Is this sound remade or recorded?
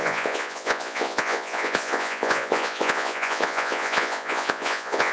remade